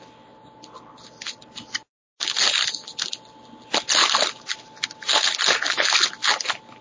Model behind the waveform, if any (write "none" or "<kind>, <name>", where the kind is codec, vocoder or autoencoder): none